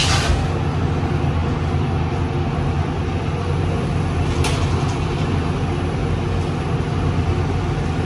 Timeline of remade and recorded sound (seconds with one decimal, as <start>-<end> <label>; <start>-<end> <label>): 0.0-8.1 recorded